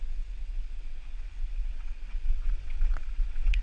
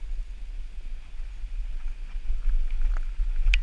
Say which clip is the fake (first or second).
first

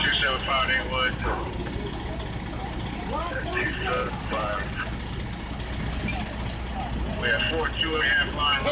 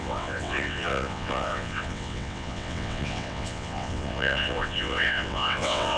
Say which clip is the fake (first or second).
second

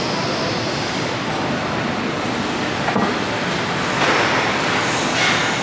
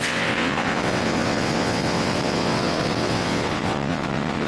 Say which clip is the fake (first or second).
second